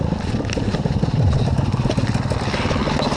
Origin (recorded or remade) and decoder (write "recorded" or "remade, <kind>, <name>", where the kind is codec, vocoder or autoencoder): recorded